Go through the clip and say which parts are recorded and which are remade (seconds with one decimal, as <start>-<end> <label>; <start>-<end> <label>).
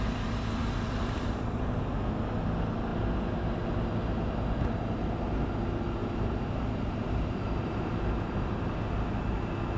0.0-0.6 recorded; 0.6-2.0 remade; 2.0-6.0 recorded; 6.0-8.5 remade; 8.5-9.8 recorded